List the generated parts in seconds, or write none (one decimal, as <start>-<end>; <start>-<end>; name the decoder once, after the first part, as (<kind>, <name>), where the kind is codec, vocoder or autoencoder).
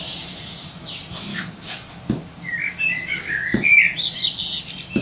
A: 1.3-2.0 (codec, DAC)